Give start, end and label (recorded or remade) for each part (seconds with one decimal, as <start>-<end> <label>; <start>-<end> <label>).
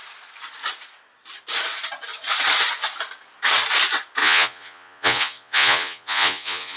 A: 0.0-4.2 recorded; 4.2-6.8 remade